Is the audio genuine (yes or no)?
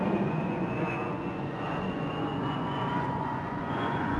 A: no